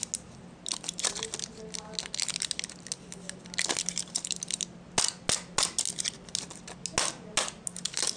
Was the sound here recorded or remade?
recorded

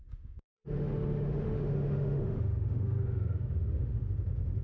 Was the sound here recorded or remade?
remade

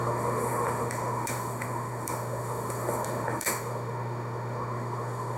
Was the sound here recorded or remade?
remade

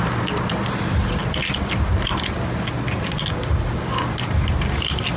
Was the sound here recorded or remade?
recorded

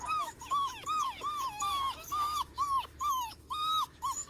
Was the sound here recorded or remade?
remade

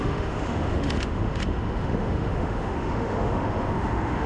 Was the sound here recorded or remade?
remade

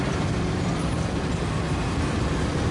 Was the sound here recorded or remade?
recorded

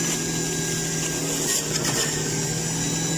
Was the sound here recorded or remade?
recorded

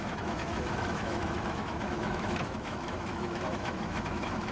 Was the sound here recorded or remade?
remade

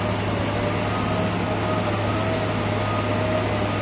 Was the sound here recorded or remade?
recorded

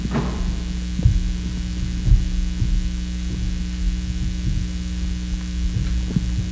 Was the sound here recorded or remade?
recorded